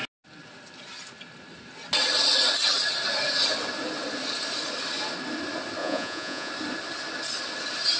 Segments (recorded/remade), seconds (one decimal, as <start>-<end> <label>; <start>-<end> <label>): 0.0-5.8 recorded; 5.8-6.5 remade; 6.5-8.0 recorded